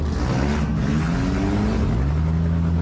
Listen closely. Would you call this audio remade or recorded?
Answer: recorded